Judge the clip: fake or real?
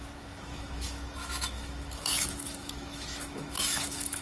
fake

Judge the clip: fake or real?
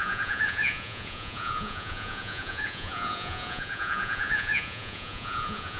fake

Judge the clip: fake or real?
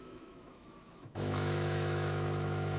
fake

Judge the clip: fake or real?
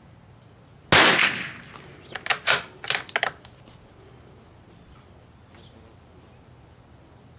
real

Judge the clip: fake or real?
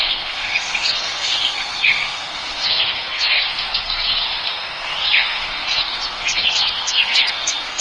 fake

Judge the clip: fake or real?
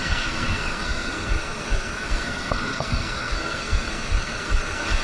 fake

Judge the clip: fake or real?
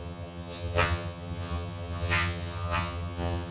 fake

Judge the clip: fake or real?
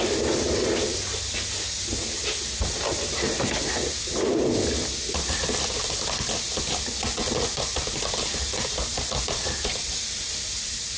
real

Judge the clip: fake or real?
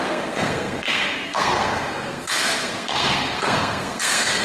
fake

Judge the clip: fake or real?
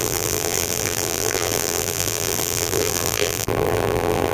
fake